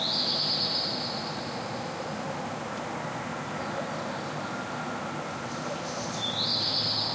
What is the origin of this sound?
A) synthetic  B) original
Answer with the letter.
B